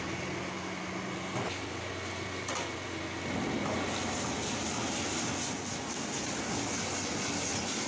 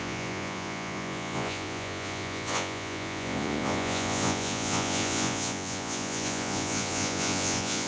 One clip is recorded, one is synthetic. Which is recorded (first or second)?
first